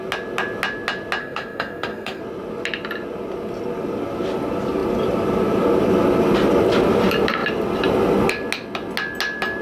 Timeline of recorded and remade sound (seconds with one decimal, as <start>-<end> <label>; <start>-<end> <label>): 0.0-1.2 recorded; 1.2-2.2 remade; 2.2-9.6 recorded